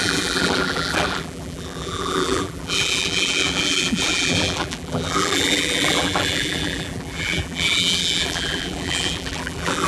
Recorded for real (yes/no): no